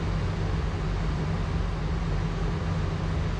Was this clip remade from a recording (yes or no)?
no